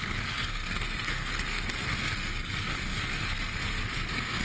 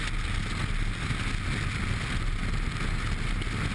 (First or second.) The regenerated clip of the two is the first